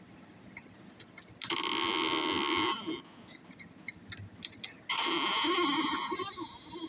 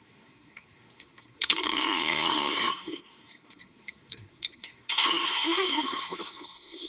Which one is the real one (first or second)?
first